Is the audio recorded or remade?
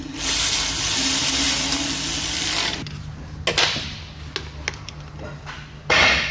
recorded